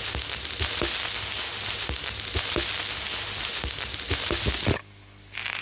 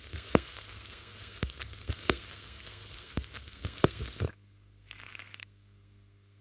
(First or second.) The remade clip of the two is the second